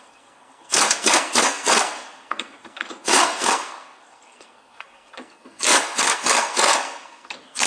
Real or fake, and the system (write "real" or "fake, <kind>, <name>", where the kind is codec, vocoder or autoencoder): fake, codec, SNAC